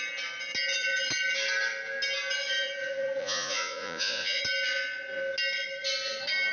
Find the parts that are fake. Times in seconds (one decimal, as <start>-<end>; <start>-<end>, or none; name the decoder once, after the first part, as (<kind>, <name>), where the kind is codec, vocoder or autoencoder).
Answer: 3.2-4.4 (vocoder, Vocos)